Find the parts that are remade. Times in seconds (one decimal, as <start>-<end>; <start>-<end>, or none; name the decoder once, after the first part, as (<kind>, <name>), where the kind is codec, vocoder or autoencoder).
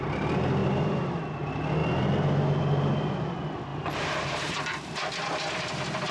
0.6-1.2 (vocoder, BigVGAN v2); 3.7-5.1